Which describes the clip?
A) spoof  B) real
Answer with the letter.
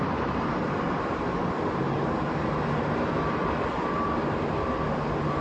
B